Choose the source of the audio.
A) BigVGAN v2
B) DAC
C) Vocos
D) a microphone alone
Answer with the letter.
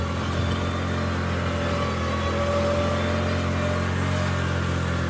D